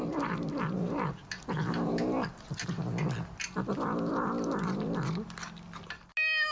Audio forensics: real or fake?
real